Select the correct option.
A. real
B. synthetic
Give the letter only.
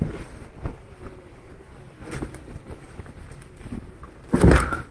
A